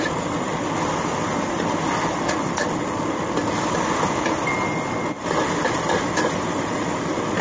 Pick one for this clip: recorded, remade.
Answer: recorded